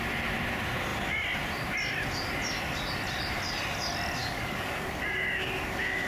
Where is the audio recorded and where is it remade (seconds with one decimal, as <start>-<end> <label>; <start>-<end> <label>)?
0.0-4.2 recorded; 4.2-6.1 remade